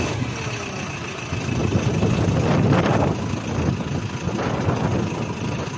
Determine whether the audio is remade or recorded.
recorded